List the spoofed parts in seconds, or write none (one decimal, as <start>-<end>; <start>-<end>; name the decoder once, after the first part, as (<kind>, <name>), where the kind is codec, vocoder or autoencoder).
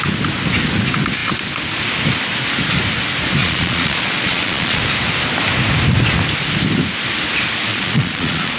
3.4-4.8 (vocoder, Vocos); 7.7-8.6